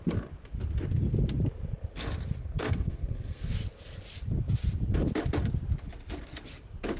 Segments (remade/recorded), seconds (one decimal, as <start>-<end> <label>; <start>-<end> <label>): 0.0-2.4 recorded; 2.4-3.5 remade; 3.5-7.0 recorded